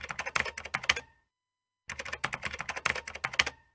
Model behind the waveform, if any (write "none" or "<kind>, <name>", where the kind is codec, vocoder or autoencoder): none